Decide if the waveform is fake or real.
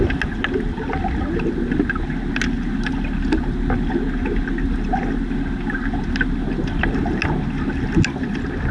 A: real